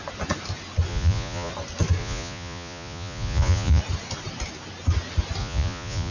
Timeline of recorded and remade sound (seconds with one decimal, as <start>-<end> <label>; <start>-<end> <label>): 0.0-0.9 recorded; 0.9-1.5 remade; 1.5-2.0 recorded; 2.0-3.8 remade; 3.8-5.4 recorded; 5.4-6.1 remade